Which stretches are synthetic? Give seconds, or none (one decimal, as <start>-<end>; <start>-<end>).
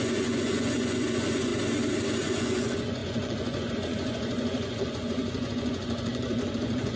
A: 0.0-1.5; 2.2-7.0